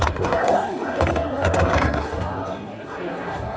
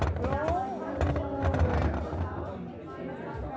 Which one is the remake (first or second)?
first